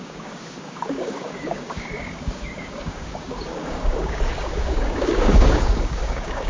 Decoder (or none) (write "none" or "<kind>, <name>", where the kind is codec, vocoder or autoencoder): codec, DAC